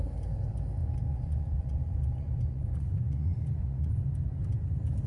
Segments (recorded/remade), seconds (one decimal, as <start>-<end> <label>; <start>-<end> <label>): 0.0-0.8 recorded; 0.8-3.9 remade; 3.9-5.1 recorded